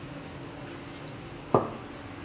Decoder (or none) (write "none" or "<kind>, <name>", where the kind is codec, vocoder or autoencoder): none